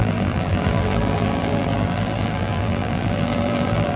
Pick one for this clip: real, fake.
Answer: fake